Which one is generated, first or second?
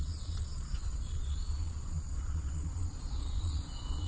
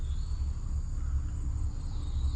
first